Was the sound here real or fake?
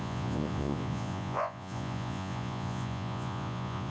fake